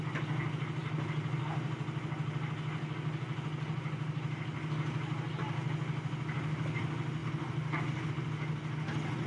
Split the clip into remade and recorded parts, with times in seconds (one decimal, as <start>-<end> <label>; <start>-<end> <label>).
0.0-9.3 recorded